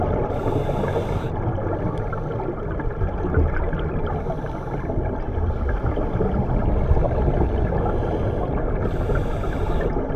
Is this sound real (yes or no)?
yes